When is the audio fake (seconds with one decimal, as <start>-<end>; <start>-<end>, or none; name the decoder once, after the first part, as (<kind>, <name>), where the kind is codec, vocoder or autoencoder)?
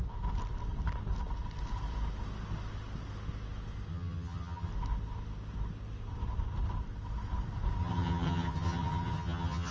3.9-4.7 (vocoder, HiFi-GAN); 7.8-9.7